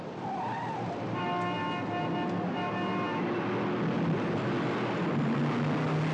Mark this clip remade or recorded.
recorded